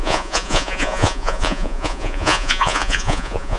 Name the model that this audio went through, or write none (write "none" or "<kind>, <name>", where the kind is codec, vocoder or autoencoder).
vocoder, Vocos